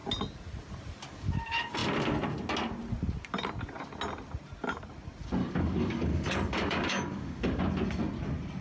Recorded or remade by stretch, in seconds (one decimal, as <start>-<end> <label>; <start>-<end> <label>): 0.0-5.4 recorded; 5.4-7.6 remade; 7.6-8.6 recorded